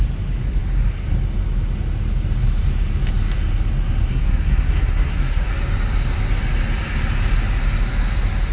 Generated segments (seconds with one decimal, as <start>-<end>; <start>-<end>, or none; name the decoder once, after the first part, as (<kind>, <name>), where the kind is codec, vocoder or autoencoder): 4.1-5.5 (codec, SNAC)